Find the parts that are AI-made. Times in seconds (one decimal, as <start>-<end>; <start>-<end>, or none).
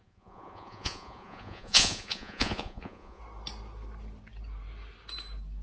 0.0-3.2